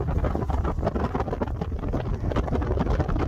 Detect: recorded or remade recorded